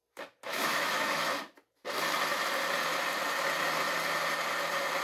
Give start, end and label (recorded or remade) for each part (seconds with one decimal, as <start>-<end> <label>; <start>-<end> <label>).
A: 0.0-0.5 recorded; 0.5-1.2 remade; 1.2-5.0 recorded